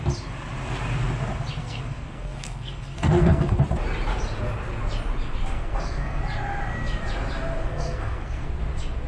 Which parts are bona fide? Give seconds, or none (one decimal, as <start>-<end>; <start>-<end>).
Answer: 0.0-1.6; 3.6-5.5; 6.2-7.6; 8.6-9.1